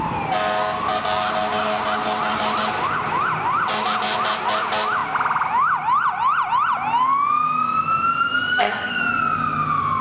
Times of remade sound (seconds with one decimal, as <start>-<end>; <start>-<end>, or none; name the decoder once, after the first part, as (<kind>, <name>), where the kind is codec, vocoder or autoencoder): 8.5-9.0 (codec, SNAC)